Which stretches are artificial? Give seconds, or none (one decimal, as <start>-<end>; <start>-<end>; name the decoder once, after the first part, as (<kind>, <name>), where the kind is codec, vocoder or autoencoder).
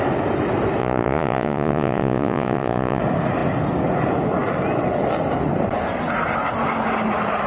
0.8-3.0 (vocoder, Vocos)